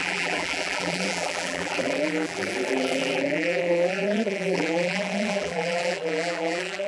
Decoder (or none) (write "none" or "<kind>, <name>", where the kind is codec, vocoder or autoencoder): vocoder, BigVGAN v2